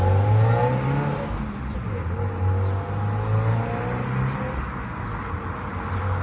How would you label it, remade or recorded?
recorded